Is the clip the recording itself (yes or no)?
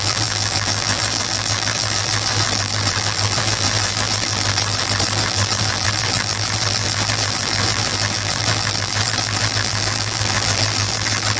no